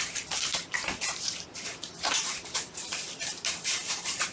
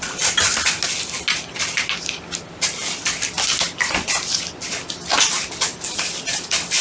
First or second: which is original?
second